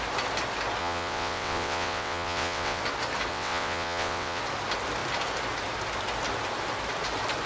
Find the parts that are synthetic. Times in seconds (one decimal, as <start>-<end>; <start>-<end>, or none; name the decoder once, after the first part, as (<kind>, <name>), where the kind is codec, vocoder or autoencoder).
0.8-2.8 (vocoder, WaveNeXt); 3.3-4.4